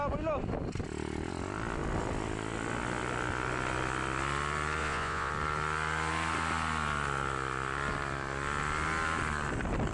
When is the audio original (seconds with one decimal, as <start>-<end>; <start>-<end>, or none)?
0.0-4.8; 5.3-9.9